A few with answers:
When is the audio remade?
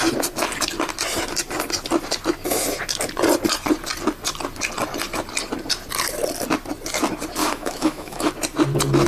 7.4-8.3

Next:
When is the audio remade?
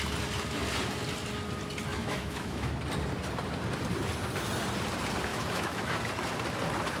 1.9-2.7; 5.3-5.9